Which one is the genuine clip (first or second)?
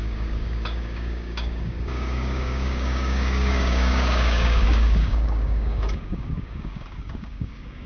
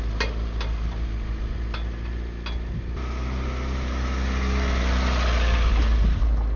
second